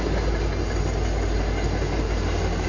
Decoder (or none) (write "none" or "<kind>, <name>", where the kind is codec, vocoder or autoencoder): none